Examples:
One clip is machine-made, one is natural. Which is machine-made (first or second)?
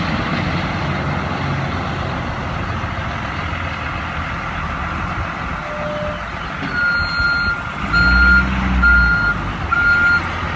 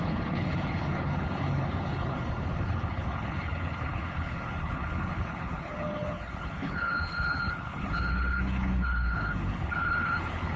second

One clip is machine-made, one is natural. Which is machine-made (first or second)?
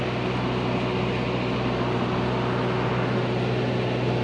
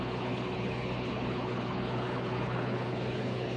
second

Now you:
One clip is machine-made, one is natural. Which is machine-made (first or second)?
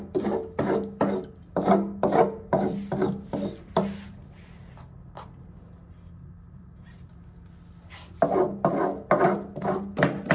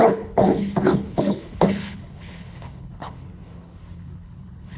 second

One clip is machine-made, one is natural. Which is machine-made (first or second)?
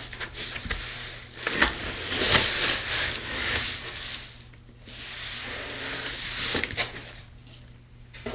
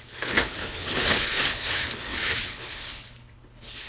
second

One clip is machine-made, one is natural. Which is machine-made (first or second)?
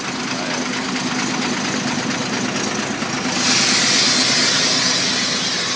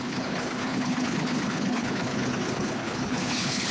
second